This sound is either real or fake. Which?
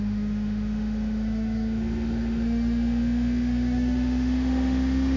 fake